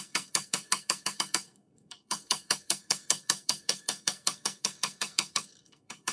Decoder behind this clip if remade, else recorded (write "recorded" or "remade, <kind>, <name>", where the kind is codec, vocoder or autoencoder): remade, codec, SNAC